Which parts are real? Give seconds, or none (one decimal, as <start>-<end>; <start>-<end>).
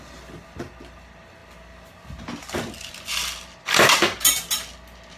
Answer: 0.0-5.2